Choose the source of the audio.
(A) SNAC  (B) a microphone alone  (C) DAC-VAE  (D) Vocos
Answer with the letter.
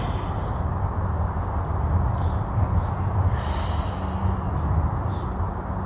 B